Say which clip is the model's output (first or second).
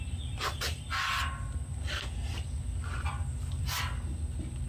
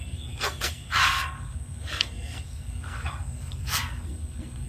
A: second